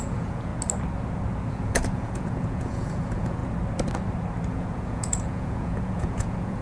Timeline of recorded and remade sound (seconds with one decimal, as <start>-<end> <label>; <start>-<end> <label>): 0.0-0.5 remade; 0.5-1.5 recorded; 1.5-3.4 remade; 3.4-4.5 recorded; 4.5-6.6 remade